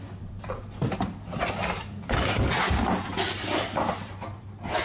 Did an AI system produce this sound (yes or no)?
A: no